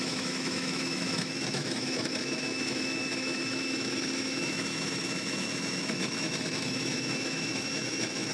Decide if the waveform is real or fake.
fake